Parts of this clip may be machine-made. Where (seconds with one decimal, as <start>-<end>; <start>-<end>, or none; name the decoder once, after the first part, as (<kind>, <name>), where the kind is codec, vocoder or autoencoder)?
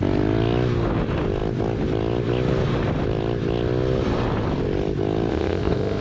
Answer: 5.3-6.0 (codec, ZipCodec)